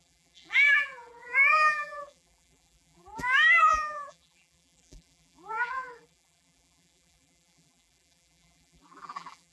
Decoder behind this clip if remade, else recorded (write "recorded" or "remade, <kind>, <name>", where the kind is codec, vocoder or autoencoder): remade, vocoder, BigVGAN v2